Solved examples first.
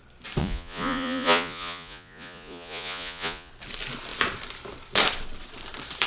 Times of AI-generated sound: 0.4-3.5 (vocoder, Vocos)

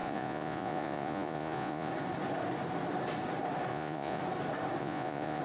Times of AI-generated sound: 0.0-1.9 (vocoder, Vocos); 3.7-4.2; 4.8-5.4

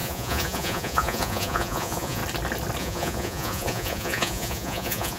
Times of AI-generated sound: 0.0-2.2 (vocoder, Vocos); 2.8-5.2

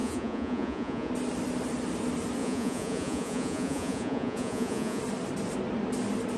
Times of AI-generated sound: 0.0-1.1 (vocoder, Vocos); 2.4-5.0

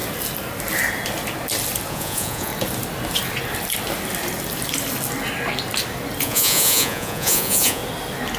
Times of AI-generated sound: 1.9-2.5 (vocoder, Vocos); 6.2-7.8

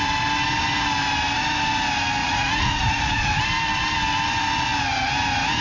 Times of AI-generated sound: 2.2-3.4 (vocoder, Vocos)

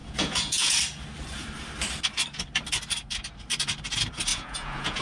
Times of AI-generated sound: 0.0-0.8 (vocoder, Vocos); 4.3-5.0

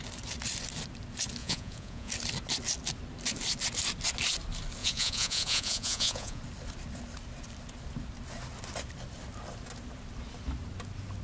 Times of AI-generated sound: 1.4-2.1 (vocoder, Vocos); 4.8-6.4